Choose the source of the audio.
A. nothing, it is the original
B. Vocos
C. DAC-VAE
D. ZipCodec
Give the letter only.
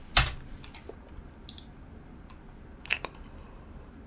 A